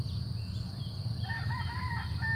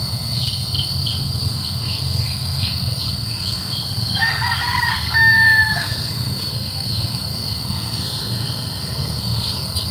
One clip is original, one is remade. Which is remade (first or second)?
second